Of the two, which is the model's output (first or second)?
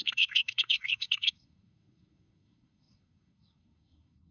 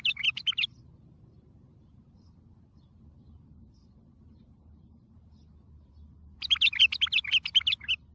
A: first